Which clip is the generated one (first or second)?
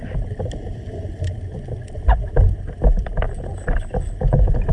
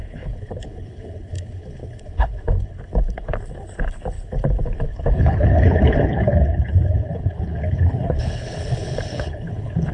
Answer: second